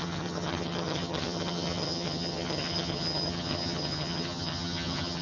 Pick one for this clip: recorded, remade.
remade